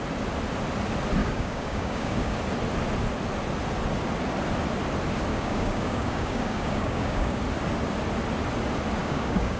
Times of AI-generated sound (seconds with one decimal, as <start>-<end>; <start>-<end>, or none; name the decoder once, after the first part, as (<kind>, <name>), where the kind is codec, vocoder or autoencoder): 1.2-2.4 (codec, DAC); 5.3-7.4; 9.0-9.6